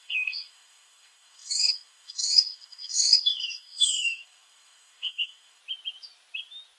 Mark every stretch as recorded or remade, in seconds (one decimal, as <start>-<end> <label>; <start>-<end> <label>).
0.0-5.6 remade; 5.6-6.8 recorded